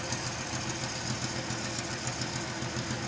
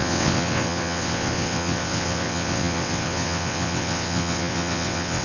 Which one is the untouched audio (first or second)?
first